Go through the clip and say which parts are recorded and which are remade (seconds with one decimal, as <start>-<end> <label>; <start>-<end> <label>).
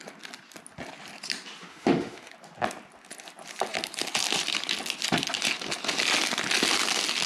0.0-1.7 recorded; 1.7-2.3 remade; 2.3-7.3 recorded